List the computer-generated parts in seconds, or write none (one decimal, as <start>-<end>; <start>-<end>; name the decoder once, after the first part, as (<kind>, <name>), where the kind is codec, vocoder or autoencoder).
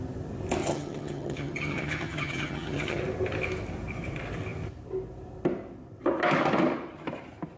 0.6-3.0 (vocoder, HiFi-GAN)